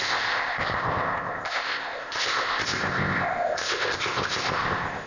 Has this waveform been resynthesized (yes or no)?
yes